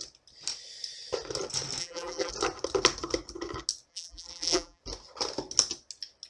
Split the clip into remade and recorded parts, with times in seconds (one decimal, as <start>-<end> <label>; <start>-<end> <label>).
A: 0.0-1.8 recorded; 1.8-2.3 remade; 2.3-3.9 recorded; 3.9-4.8 remade; 4.8-6.3 recorded